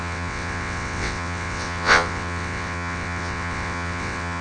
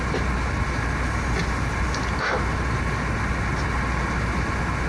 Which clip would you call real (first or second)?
second